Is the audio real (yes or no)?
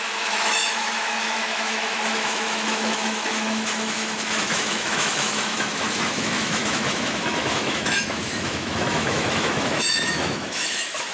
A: no